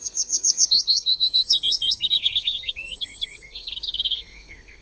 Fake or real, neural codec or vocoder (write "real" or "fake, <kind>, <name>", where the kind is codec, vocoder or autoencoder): fake, codec, SNAC